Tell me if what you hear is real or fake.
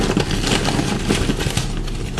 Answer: real